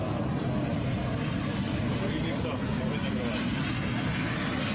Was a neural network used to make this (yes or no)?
no